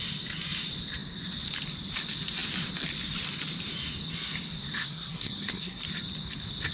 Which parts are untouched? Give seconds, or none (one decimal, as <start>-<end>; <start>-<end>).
0.0-4.8; 5.8-6.7